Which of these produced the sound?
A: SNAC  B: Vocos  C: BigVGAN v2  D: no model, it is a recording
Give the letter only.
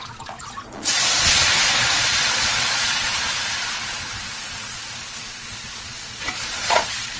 B